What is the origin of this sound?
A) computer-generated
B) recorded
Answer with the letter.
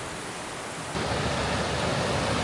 B